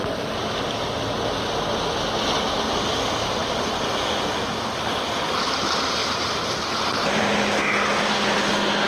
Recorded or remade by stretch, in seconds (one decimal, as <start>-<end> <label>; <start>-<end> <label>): 0.0-6.0 recorded; 6.0-7.2 remade; 7.2-8.9 recorded